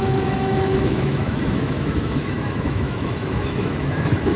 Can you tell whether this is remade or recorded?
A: remade